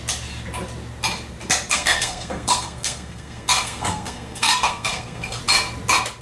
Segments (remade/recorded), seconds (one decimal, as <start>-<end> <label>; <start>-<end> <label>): 0.0-1.7 recorded; 1.7-5.4 remade; 5.4-6.2 recorded